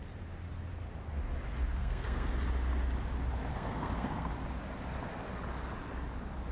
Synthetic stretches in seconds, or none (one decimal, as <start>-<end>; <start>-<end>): 1.8-2.3; 3.5-4.3

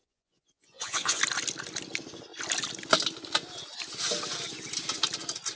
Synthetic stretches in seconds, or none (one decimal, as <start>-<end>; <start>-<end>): 0.0-1.2

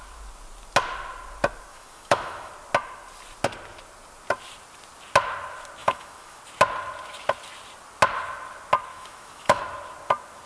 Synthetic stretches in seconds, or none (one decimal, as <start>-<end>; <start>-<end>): 1.7-2.5; 5.8-6.4; 8.9-9.6